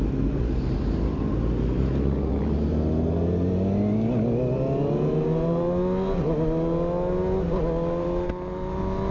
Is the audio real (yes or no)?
yes